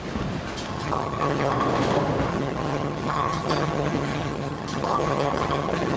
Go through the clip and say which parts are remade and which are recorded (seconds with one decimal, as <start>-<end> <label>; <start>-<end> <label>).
0.0-0.7 recorded; 0.7-1.5 remade; 1.5-2.3 recorded; 2.3-6.0 remade